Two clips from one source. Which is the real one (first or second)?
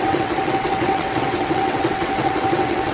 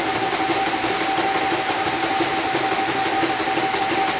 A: second